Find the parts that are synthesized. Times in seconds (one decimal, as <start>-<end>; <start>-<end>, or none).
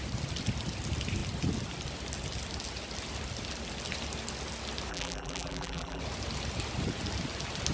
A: 4.9-6.0